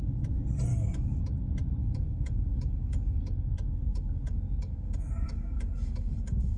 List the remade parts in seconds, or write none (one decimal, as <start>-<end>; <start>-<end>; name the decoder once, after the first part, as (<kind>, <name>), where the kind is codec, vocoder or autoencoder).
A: 0.7-1.2 (codec, DAC); 1.8-3.2; 3.9-6.6